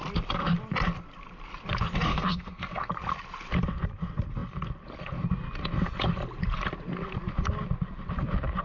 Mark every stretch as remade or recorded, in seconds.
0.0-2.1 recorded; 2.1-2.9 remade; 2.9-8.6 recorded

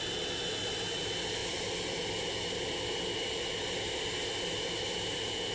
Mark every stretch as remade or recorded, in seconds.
0.0-5.5 recorded